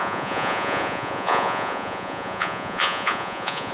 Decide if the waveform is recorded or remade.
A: remade